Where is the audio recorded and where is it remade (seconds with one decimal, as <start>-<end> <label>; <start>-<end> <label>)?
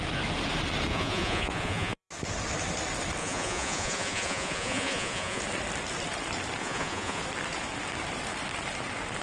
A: 0.0-0.9 recorded; 0.9-2.1 remade; 2.1-3.2 recorded; 3.2-5.4 remade; 5.4-6.6 recorded; 6.6-7.2 remade; 7.2-9.2 recorded